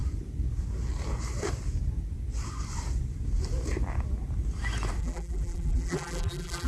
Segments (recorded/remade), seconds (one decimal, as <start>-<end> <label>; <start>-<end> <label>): 0.0-5.0 recorded; 5.0-6.7 remade